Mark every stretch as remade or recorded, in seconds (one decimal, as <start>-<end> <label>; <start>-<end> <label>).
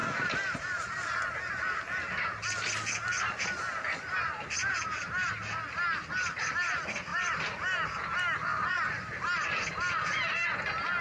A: 0.0-4.6 recorded; 4.6-5.3 remade; 5.3-7.1 recorded; 7.1-9.3 remade; 9.3-11.0 recorded